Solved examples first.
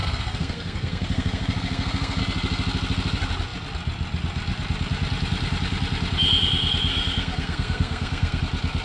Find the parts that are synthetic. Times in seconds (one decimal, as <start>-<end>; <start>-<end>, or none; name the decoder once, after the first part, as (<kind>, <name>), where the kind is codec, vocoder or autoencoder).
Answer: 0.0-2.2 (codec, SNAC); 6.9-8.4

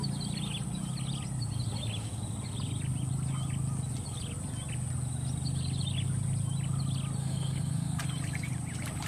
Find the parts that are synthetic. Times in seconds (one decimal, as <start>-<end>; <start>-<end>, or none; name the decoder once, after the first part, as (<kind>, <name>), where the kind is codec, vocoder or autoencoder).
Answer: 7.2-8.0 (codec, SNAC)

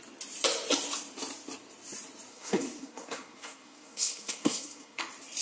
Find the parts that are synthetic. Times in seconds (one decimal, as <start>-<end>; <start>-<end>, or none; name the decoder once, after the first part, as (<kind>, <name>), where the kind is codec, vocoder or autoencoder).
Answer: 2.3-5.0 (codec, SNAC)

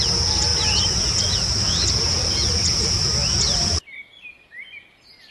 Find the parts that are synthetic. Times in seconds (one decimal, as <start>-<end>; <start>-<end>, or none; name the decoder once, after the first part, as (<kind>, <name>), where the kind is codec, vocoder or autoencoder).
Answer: none